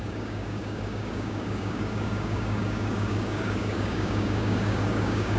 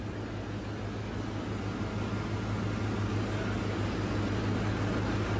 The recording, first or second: second